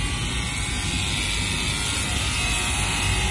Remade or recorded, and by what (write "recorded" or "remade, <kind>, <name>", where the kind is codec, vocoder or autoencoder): recorded